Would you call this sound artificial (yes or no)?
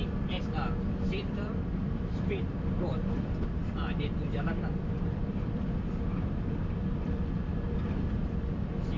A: yes